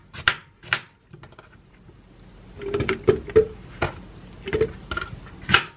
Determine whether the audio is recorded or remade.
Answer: recorded